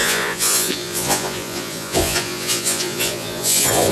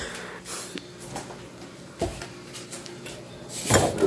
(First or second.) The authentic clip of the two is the second